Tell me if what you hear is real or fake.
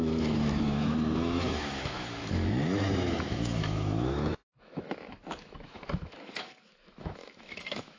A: fake